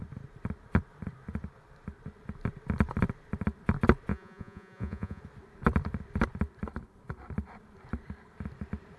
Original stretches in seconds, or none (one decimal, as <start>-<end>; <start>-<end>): 0.0-4.1; 5.2-9.0